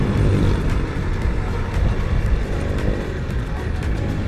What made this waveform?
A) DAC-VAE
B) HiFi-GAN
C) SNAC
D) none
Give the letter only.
D